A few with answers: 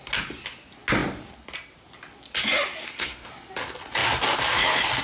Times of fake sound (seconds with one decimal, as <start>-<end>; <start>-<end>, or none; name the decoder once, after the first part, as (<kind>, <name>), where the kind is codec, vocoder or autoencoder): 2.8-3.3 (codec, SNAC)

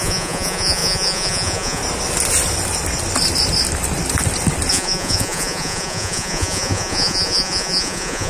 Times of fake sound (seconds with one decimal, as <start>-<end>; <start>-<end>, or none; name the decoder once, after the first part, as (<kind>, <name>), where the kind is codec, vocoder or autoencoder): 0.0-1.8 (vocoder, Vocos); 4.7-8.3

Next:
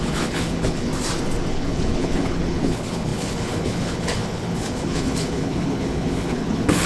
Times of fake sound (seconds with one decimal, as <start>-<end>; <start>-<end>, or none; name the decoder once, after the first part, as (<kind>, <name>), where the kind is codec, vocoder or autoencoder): 0.0-0.9 (codec, HILCodec); 1.5-6.9

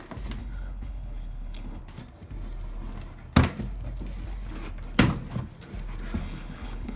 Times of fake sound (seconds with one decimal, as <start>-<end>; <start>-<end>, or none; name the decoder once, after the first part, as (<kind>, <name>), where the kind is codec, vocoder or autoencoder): 0.4-1.8 (codec, HILCodec); 6.2-7.0